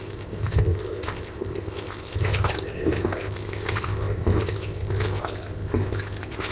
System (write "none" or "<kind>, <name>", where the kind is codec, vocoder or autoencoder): codec, ZipCodec